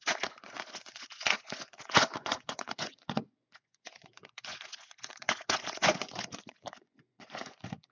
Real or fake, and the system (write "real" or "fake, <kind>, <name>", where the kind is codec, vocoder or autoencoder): fake, vocoder, Vocos